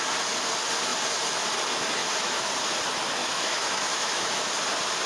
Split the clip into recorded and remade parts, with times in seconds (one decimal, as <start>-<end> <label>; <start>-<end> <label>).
0.0-2.0 recorded; 2.0-2.5 remade; 2.5-3.2 recorded; 3.2-4.5 remade; 4.5-5.1 recorded